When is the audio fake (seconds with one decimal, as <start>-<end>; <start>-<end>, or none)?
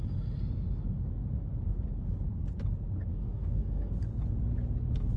3.1-3.9